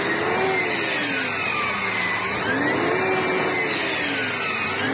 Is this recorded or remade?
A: recorded